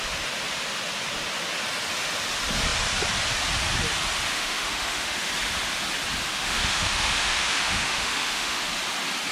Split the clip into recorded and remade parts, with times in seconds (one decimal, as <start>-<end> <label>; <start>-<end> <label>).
0.0-4.3 recorded; 4.3-5.3 remade; 5.3-6.3 recorded; 6.3-8.7 remade; 8.7-9.3 recorded